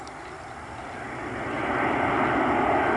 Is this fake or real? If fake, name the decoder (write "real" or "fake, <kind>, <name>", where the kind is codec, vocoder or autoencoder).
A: real